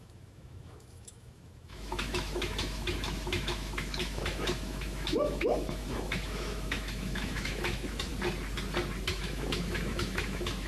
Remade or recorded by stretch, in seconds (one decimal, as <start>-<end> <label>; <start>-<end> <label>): 0.0-8.1 remade; 8.1-9.1 recorded; 9.1-10.7 remade